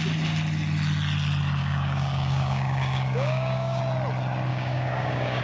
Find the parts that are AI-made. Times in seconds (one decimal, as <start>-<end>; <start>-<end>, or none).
1.6-3.8; 4.5-5.4